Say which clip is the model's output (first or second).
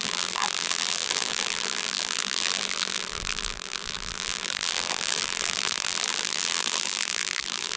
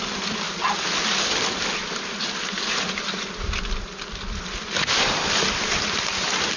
first